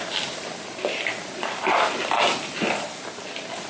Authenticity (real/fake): real